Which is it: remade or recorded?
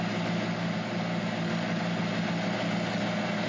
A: recorded